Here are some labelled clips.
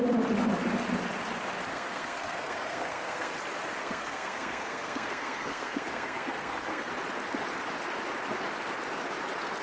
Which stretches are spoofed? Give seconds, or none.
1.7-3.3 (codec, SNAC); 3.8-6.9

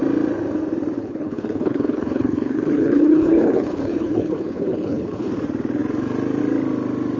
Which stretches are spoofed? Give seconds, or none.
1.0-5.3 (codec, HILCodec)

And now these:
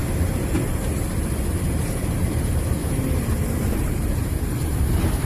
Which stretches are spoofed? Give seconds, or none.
1.8-5.2 (vocoder, BigVGAN v2)